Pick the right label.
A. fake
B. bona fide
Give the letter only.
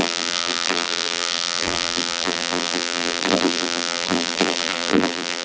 A